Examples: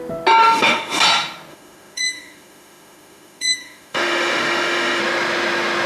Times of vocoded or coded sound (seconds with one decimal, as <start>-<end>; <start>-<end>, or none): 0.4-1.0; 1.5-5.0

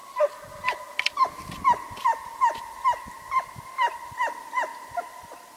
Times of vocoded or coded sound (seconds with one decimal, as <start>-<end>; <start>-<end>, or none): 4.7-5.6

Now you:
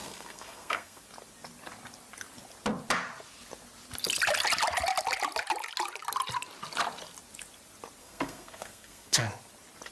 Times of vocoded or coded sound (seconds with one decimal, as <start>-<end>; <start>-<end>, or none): 0.0-1.0; 8.0-9.2